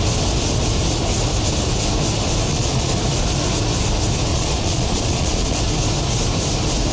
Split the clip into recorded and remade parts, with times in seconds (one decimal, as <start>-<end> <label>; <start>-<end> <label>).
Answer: 0.0-2.5 recorded; 2.5-3.0 remade; 3.0-4.3 recorded; 4.3-5.6 remade; 5.6-6.9 recorded